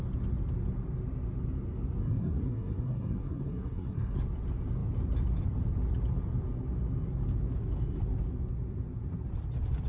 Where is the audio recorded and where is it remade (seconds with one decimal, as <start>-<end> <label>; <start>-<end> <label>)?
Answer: 0.0-2.0 recorded; 2.0-4.2 remade; 4.2-9.9 recorded